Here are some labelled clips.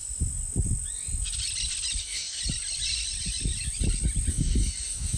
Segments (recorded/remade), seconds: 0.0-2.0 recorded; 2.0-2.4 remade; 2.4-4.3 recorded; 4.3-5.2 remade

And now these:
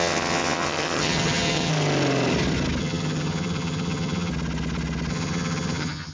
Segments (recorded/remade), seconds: 0.0-1.7 remade; 1.7-2.8 recorded; 2.8-4.3 remade; 4.3-5.1 recorded; 5.1-6.1 remade

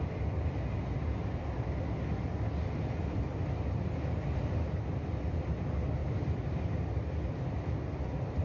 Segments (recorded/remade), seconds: 0.0-8.4 recorded

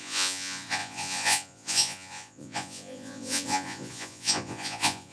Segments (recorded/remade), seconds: 0.0-5.1 remade

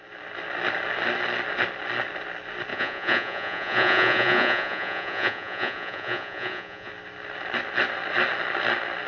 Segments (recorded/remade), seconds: 0.0-2.7 recorded; 2.7-6.9 remade; 6.9-9.1 recorded